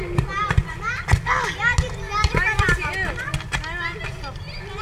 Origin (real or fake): real